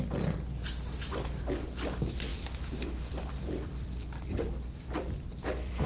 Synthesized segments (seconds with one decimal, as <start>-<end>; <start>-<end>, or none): 2.3-5.9